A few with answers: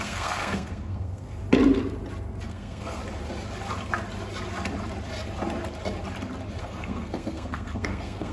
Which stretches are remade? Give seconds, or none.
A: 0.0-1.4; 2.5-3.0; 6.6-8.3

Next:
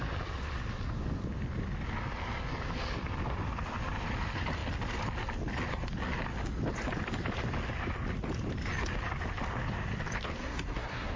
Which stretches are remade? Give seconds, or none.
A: 10.4-11.2

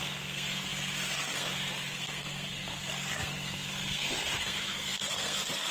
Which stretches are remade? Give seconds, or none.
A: 0.0-5.7

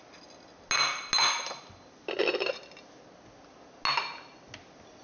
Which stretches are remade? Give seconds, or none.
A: none

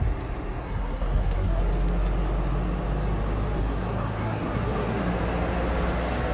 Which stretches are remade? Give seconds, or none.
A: 0.6-1.6; 3.6-5.0

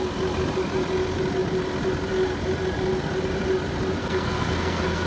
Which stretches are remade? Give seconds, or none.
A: 4.0-5.1

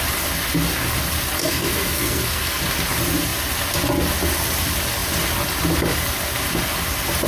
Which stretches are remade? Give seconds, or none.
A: 1.4-2.6